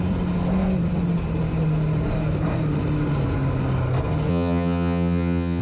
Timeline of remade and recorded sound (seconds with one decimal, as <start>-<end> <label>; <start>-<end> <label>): 0.0-4.3 recorded; 4.3-5.6 remade

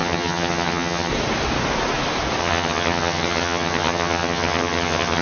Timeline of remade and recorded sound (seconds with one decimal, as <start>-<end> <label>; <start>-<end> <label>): 0.0-1.1 remade; 1.1-2.4 recorded; 2.4-5.2 remade

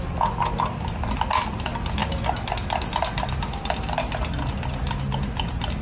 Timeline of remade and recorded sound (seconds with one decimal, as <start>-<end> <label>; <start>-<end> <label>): 0.0-5.8 recorded

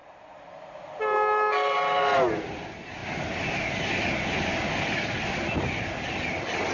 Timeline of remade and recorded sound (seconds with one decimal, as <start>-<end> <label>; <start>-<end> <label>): 0.0-6.7 recorded